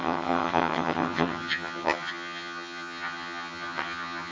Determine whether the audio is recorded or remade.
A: remade